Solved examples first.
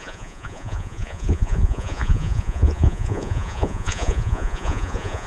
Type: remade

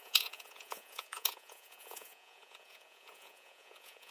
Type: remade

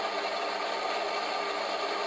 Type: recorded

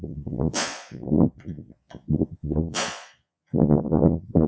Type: remade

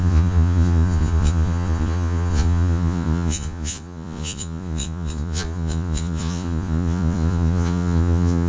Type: remade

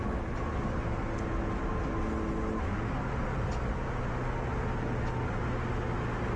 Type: recorded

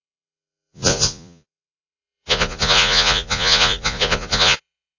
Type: remade